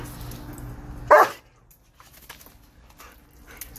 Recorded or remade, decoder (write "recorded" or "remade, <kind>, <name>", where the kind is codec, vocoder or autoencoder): recorded